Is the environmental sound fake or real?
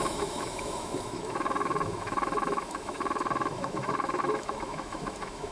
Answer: fake